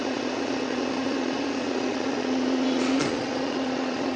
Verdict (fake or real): fake